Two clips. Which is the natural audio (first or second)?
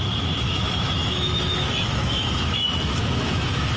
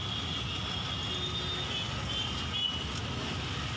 second